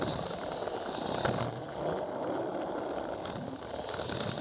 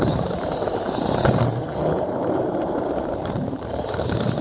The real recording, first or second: first